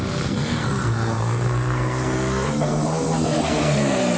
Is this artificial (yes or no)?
yes